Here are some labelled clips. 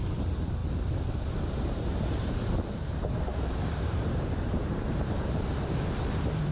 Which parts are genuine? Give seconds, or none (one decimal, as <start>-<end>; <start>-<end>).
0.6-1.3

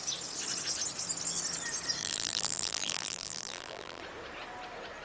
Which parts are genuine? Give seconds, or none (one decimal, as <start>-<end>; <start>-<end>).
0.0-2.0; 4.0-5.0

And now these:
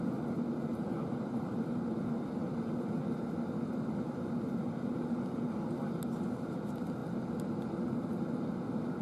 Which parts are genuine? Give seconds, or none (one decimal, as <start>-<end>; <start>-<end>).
0.0-0.7; 2.0-9.0

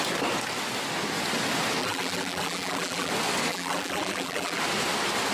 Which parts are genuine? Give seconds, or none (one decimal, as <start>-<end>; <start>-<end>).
0.0-1.8; 3.1-3.5; 4.6-5.3

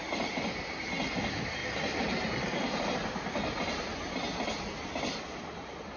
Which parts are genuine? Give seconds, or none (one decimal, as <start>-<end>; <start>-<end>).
0.0-6.0

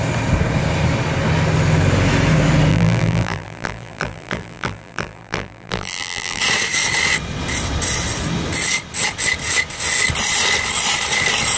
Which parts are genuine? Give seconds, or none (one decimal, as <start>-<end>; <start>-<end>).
0.0-2.7; 6.4-11.6

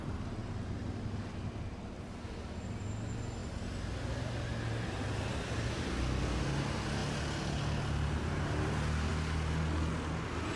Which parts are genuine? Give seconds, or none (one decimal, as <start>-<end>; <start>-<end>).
0.0-10.6